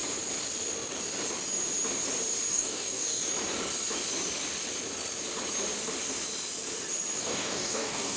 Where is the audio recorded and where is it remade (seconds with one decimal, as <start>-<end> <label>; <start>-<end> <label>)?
0.0-2.5 recorded; 2.5-3.3 remade; 3.3-7.2 recorded; 7.2-8.2 remade